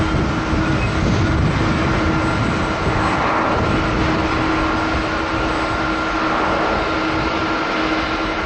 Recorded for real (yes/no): yes